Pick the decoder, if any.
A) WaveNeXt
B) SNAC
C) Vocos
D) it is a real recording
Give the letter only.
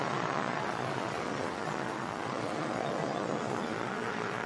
C